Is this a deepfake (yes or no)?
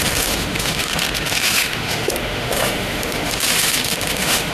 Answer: yes